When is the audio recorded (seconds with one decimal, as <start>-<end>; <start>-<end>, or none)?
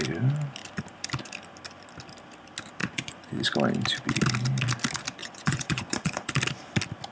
0.0-2.8; 3.4-5.2; 6.3-7.1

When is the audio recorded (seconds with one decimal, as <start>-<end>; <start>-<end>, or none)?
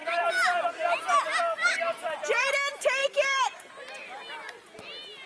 0.7-3.0; 3.7-5.3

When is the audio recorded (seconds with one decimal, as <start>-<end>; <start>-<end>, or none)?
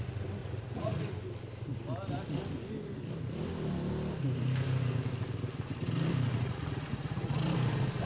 0.0-0.4; 1.0-6.3; 7.4-8.1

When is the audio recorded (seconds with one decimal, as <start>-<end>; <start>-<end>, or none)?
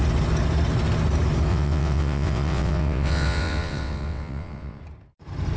0.0-1.5; 4.8-5.6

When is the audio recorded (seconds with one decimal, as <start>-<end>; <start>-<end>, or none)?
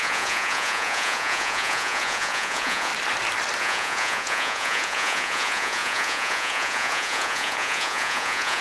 2.9-3.6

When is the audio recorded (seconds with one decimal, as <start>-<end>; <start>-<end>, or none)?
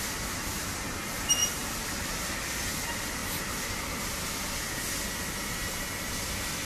0.0-1.4; 2.3-6.6